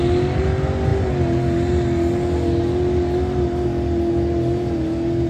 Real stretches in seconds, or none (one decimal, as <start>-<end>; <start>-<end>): 0.0-5.3